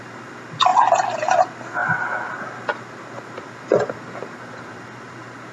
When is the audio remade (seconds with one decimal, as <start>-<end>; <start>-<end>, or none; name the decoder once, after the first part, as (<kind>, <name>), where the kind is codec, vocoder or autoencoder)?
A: none